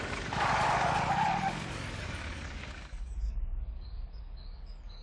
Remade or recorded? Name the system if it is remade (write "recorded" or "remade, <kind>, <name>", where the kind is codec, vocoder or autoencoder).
remade, codec, DAC